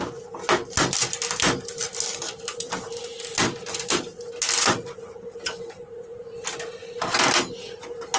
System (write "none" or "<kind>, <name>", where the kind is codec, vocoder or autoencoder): none